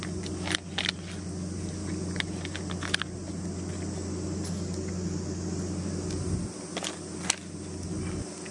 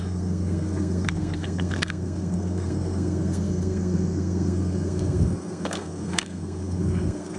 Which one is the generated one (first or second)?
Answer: second